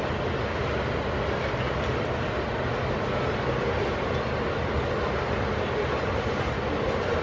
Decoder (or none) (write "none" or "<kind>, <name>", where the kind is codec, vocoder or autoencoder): none